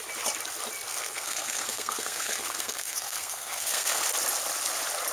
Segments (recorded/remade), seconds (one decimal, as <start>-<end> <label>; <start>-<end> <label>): 0.0-0.9 recorded; 0.9-4.0 remade; 4.0-5.1 recorded